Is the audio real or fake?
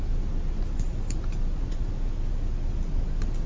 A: real